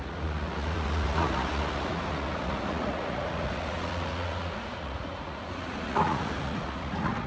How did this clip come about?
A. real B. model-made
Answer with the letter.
B